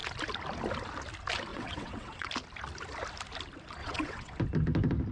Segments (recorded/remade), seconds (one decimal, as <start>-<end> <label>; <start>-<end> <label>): 0.0-1.5 recorded; 1.5-2.3 remade; 2.3-3.8 recorded; 3.8-4.4 remade; 4.4-5.1 recorded